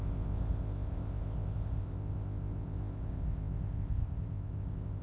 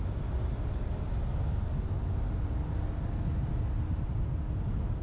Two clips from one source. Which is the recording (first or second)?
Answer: second